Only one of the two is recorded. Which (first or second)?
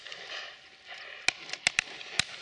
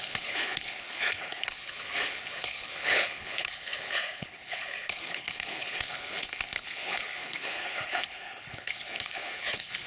first